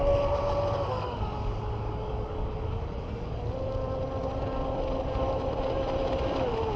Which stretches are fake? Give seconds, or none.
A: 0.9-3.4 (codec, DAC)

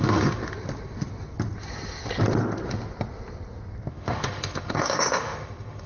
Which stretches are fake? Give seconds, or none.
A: 0.0-0.4 (autoencoder, DAC-VAE); 3.9-5.9

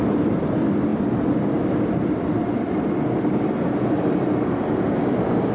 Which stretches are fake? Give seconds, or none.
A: 0.0-5.5 (vocoder, BigVGAN v2)

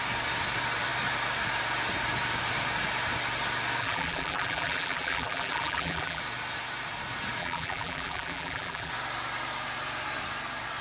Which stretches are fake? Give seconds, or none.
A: 3.8-6.2 (vocoder, BigVGAN v2); 7.4-8.9

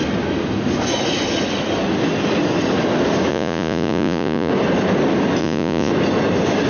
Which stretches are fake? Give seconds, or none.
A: 3.3-4.5 (vocoder, Vocos); 5.4-5.9

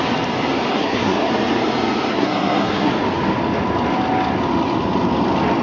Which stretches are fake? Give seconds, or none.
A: 0.7-1.3 (codec, SNAC); 2.1-2.9